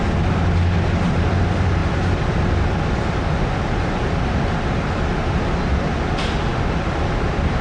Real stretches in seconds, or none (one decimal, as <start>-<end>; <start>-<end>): 0.0-7.6

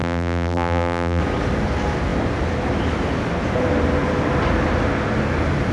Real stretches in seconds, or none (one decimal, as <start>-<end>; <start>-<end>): 1.2-5.7

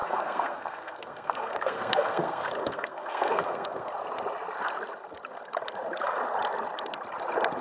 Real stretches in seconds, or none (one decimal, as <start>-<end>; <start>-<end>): 3.9-7.6

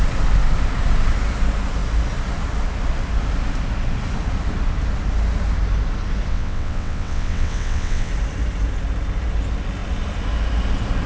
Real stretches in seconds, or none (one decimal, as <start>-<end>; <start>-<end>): 0.0-6.3; 8.1-11.1